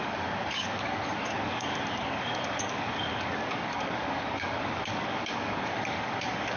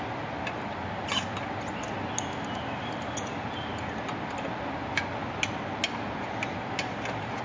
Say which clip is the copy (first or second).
first